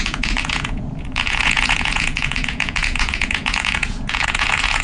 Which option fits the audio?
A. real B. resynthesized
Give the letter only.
B